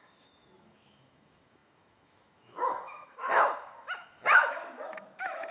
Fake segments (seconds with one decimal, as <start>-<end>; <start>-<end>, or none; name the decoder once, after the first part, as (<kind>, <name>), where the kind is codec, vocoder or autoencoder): 0.0-5.5 (autoencoder, DAC-VAE)